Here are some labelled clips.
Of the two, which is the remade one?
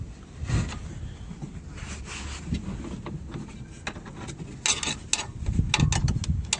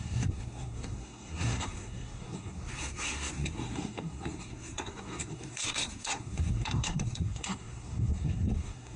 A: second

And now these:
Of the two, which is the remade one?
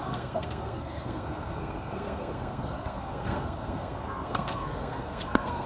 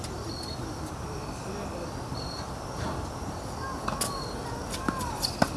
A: first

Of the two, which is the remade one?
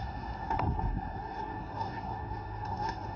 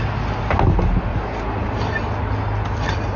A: first